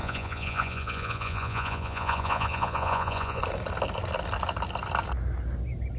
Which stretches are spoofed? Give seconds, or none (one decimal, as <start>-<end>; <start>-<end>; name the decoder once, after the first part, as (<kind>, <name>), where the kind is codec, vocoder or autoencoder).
0.0-3.4 (vocoder, Vocos)